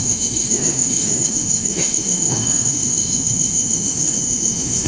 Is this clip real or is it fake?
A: fake